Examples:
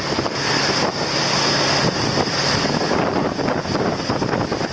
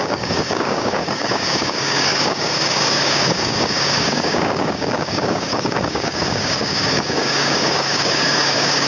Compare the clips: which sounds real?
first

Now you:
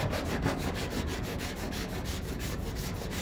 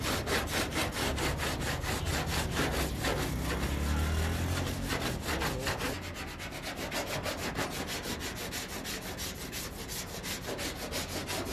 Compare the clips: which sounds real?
second